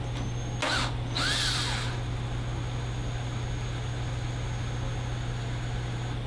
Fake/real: real